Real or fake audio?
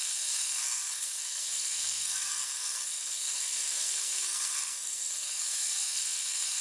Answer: fake